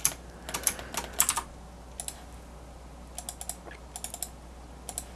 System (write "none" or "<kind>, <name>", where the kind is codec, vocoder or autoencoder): none